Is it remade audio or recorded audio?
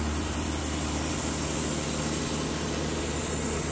recorded